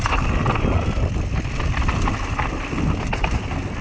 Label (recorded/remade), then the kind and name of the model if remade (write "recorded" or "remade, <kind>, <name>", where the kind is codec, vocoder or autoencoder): recorded